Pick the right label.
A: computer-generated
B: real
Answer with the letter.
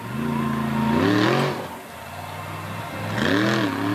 B